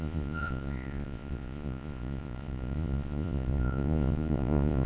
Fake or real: fake